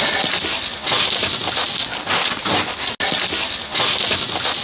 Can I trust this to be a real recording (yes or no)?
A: yes